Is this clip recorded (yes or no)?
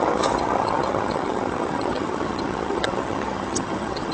no